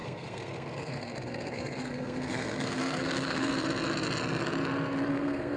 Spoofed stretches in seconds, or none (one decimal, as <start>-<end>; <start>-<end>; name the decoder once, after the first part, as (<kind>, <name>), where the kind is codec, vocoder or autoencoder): 0.0-3.5 (codec, SNAC); 5.1-5.6